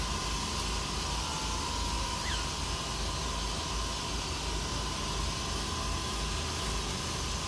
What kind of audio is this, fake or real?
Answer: real